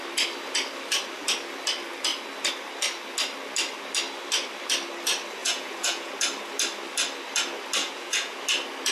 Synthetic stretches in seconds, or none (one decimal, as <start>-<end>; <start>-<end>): 5.4-6.1; 7.8-8.4